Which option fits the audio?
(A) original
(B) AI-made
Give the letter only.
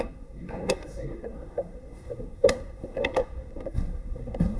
B